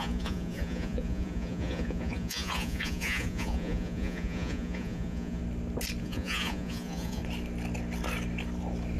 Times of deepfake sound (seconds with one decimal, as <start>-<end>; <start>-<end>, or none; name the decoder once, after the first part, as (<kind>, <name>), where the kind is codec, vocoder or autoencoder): 0.0-5.4 (vocoder, Vocos); 6.0-7.2